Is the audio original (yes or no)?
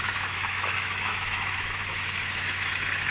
no